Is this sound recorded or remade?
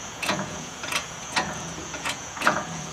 remade